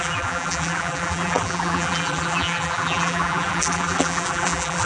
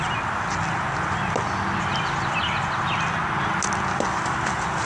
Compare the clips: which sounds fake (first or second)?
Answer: first